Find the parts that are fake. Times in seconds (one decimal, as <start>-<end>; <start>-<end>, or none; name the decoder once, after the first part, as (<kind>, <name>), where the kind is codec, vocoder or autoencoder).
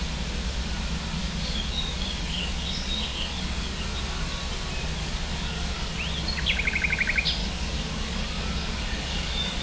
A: 1.2-4.4 (codec, DAC); 5.0-5.9; 7.4-9.6